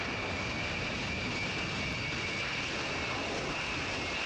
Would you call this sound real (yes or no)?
yes